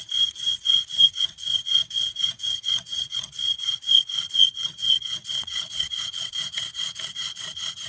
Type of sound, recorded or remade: remade